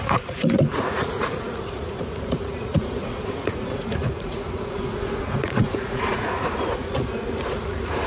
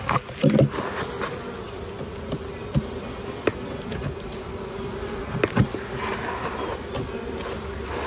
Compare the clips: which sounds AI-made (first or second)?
first